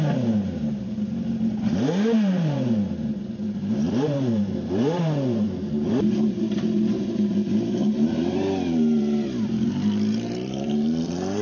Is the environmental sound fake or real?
fake